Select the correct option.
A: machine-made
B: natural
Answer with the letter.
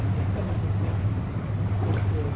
A